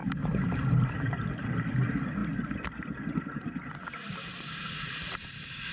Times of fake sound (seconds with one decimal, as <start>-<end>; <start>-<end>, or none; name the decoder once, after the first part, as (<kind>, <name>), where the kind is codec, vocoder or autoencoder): 0.0-1.5 (vocoder, BigVGAN v2)